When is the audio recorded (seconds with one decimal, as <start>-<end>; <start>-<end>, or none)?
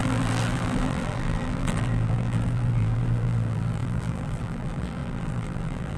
none